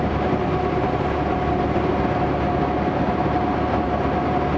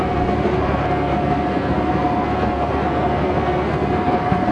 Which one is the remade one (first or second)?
second